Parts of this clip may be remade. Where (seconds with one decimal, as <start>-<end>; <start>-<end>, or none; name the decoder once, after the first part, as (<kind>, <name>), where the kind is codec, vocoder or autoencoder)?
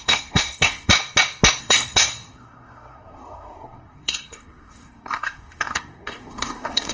0.0-0.9 (codec, SNAC); 1.6-6.9